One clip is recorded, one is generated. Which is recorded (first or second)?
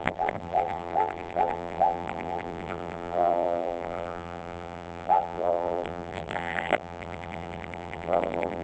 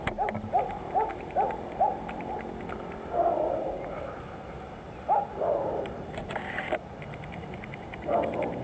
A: second